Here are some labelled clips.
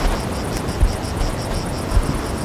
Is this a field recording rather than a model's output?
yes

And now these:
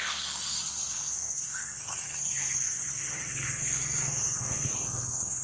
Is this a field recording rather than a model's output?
no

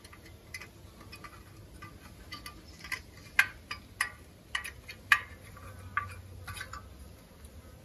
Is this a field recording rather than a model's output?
yes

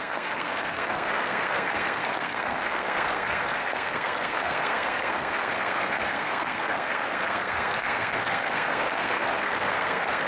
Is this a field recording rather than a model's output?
no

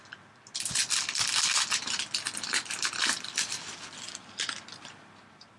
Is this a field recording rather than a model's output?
yes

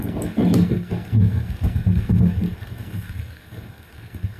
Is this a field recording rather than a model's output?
no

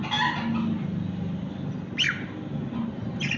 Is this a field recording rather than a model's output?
yes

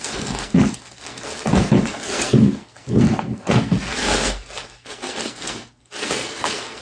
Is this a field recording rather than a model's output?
no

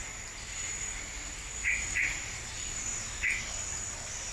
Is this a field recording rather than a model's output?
yes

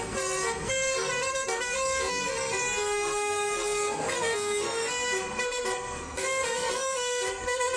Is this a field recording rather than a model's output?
no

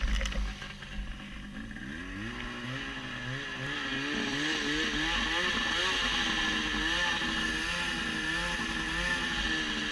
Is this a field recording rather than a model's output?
yes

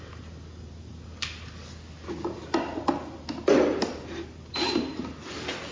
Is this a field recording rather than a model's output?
yes